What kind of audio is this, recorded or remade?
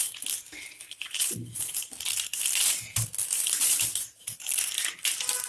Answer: recorded